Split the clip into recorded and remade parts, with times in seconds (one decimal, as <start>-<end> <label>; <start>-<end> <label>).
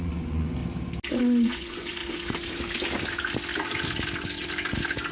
0.0-0.6 remade; 0.6-1.1 recorded; 1.1-2.0 remade; 2.0-5.1 recorded